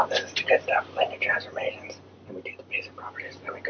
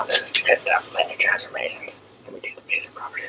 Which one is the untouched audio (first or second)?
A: first